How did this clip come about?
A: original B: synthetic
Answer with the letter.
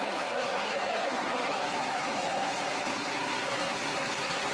B